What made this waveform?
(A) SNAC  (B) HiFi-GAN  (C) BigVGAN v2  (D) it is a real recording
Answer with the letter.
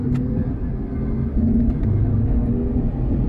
D